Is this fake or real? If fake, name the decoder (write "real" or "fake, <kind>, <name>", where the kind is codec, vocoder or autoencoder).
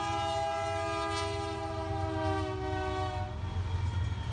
real